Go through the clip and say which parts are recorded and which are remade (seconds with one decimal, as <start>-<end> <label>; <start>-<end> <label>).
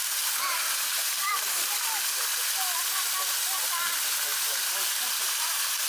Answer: 0.0-5.9 remade